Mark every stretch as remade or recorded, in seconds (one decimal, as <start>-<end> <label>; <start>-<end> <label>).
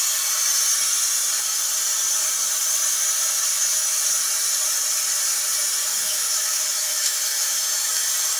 0.0-3.5 recorded; 3.5-4.0 remade; 4.0-5.9 recorded; 5.9-7.9 remade; 7.9-8.4 recorded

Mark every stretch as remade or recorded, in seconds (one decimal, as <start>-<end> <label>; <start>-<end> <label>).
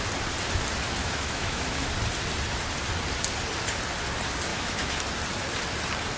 0.0-1.0 recorded; 1.0-1.9 remade; 1.9-4.5 recorded; 4.5-5.0 remade; 5.0-6.2 recorded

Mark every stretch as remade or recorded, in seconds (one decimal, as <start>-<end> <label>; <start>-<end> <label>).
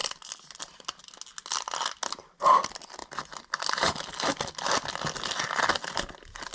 0.0-6.5 recorded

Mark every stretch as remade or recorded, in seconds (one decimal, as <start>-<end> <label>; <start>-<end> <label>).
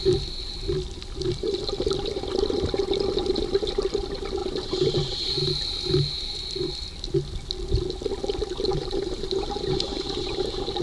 0.0-4.4 recorded; 4.4-5.3 remade; 5.3-8.7 recorded; 8.7-10.8 remade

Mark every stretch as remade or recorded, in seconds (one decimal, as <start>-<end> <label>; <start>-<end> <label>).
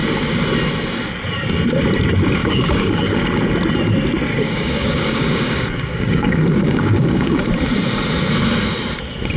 0.0-2.4 recorded; 2.4-3.2 remade; 3.2-4.3 recorded; 4.3-7.5 remade; 7.5-9.4 recorded